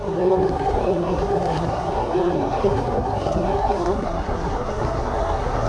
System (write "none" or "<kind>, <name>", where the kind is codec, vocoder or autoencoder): codec, SNAC